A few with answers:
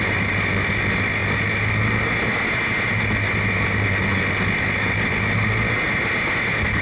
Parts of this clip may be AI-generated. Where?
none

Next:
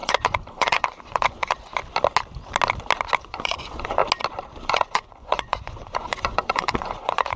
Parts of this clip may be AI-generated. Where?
0.0-1.7; 3.2-4.0; 4.7-7.4

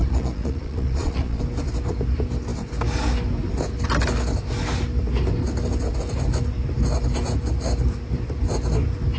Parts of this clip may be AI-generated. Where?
0.0-1.4

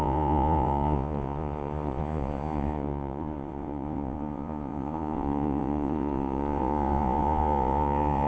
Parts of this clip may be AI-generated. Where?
0.0-8.3

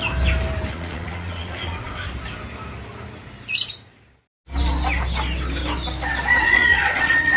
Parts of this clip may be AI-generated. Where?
0.7-2.0; 6.4-7.4